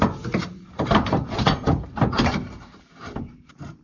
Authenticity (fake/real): fake